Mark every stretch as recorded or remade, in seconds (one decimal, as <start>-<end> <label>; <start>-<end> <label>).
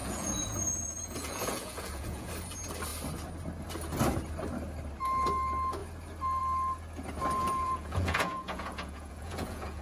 0.0-2.3 remade; 2.3-7.4 recorded; 7.4-9.8 remade